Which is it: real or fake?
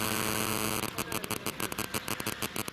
real